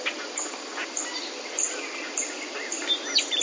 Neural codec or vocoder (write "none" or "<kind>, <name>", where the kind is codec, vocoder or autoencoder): none